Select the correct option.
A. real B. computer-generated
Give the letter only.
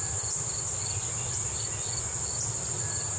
A